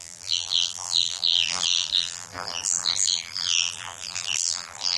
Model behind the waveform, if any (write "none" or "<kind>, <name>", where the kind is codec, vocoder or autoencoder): vocoder, BigVGAN v2